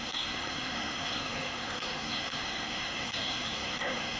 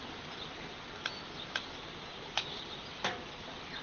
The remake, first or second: first